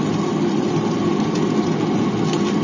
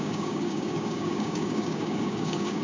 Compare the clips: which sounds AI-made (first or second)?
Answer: second